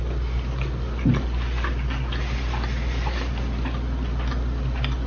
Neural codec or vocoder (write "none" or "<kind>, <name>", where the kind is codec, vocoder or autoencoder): none